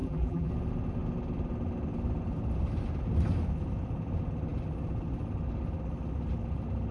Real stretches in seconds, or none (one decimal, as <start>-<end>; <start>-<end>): 0.5-6.9